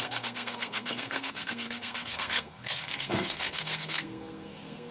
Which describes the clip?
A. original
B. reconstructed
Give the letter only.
B